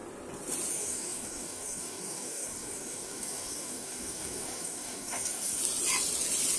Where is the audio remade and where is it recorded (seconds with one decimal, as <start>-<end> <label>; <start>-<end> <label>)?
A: 0.0-0.7 recorded; 0.7-5.6 remade; 5.6-6.6 recorded